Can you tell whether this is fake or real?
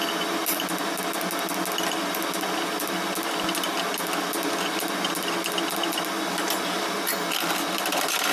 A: real